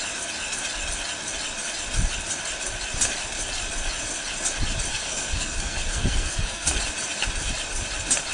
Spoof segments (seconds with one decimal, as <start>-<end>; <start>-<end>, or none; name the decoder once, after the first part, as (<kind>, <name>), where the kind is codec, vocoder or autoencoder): 4.9-6.8 (codec, SNAC)